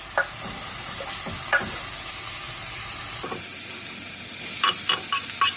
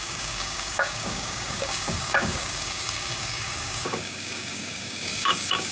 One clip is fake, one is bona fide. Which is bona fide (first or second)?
first